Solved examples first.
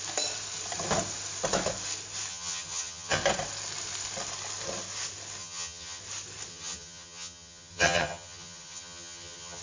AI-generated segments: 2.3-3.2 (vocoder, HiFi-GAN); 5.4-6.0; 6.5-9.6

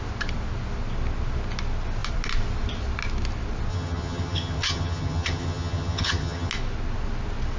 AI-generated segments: 3.7-6.5 (vocoder, HiFi-GAN)

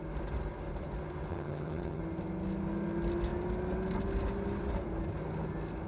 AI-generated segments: 1.3-2.0 (vocoder, HiFi-GAN)

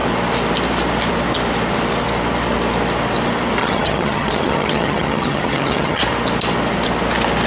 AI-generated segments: 3.6-6.0 (vocoder, HiFi-GAN)